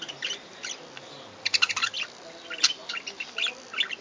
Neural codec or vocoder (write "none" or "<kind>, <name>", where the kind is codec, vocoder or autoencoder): none